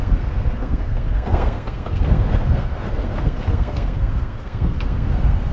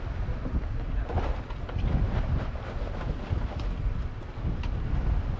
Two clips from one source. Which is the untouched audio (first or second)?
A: second